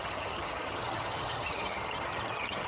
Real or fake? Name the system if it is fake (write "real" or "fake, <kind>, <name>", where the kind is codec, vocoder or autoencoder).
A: fake, vocoder, HiFi-GAN